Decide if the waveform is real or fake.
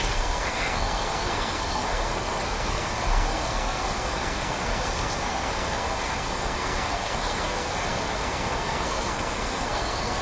fake